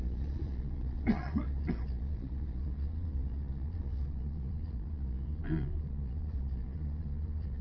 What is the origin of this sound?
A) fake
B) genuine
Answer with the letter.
A